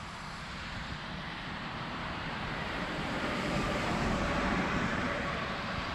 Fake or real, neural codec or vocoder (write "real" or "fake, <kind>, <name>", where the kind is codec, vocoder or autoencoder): fake, vocoder, BigVGAN v2